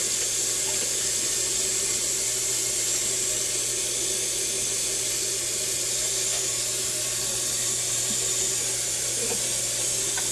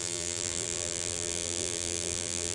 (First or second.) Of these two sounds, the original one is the first